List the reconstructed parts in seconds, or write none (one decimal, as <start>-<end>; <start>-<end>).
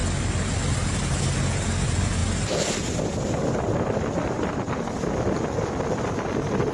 none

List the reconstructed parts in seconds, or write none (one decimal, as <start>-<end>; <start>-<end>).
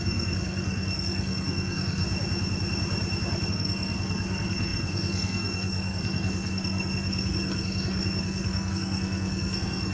0.0-2.0; 3.5-9.9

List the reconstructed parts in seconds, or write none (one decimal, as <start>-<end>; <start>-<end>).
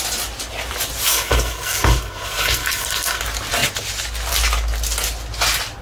1.1-3.2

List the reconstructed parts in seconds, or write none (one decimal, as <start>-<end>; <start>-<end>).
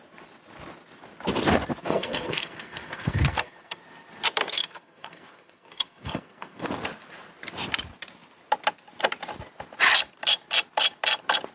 1.8-3.8; 4.4-6.7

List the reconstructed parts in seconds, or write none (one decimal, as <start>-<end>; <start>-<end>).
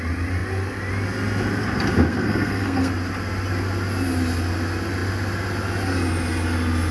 2.1-2.9